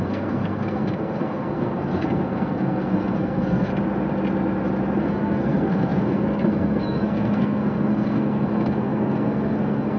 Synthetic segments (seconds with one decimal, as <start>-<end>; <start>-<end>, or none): 0.0-3.7; 5.0-10.0